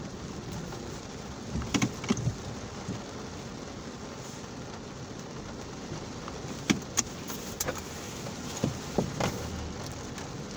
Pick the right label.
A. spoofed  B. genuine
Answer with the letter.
B